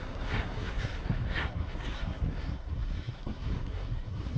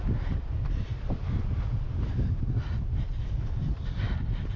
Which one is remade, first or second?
first